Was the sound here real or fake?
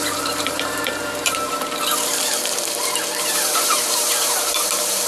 fake